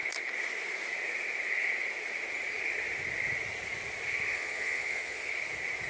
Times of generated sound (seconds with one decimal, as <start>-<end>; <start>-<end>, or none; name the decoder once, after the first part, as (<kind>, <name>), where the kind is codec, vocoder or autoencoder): 4.3-5.3 (vocoder, Vocos)